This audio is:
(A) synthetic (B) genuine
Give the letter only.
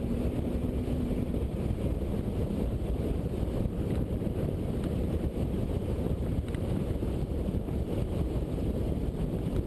A